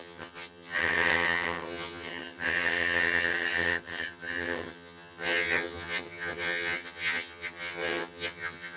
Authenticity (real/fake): fake